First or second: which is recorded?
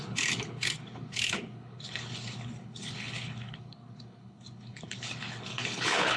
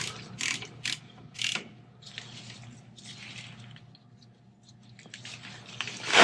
second